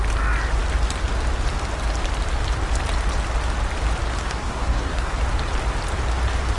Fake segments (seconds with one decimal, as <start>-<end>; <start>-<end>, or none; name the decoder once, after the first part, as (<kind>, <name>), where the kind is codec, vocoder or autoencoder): 4.2-5.1 (codec, SNAC)